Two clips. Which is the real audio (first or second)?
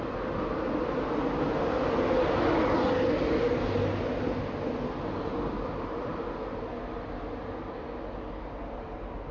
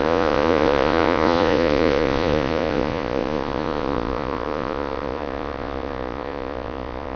first